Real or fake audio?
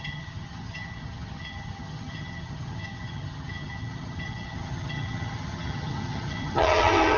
fake